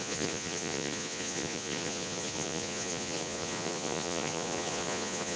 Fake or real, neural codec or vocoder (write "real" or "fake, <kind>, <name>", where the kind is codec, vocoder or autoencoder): fake, vocoder, Vocos